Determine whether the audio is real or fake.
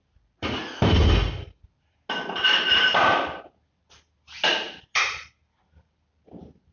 real